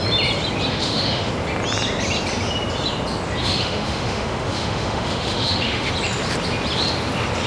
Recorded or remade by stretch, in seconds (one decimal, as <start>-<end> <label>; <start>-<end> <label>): 0.0-0.7 recorded; 0.7-1.3 remade; 1.3-3.4 recorded; 3.4-5.9 remade; 5.9-7.5 recorded